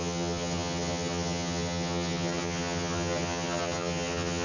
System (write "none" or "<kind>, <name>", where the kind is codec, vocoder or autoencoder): vocoder, HiFi-GAN